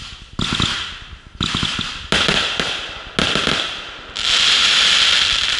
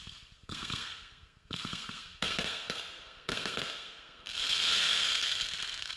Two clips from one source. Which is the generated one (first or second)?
second